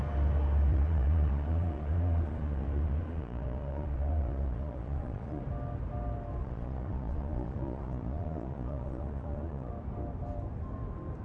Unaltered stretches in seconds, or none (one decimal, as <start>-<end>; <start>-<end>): 0.0-0.7; 5.4-6.4; 9.7-11.2